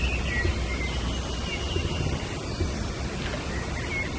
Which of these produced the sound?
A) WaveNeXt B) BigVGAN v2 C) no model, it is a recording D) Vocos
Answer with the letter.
C